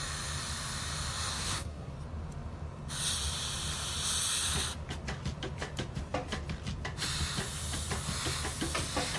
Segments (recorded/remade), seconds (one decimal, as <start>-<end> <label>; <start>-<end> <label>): 0.0-1.3 recorded; 1.3-1.9 remade; 1.9-9.2 recorded